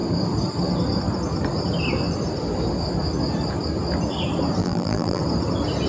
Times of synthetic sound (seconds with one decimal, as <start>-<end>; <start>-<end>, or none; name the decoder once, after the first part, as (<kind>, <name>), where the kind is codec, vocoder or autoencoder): 4.6-5.2 (vocoder, BigVGAN v2)